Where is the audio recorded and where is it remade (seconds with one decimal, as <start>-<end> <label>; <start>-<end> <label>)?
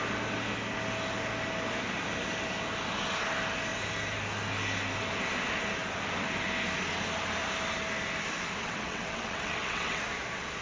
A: 0.0-8.6 recorded; 8.6-10.0 remade; 10.0-10.6 recorded